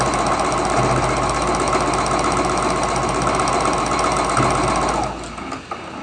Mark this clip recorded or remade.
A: recorded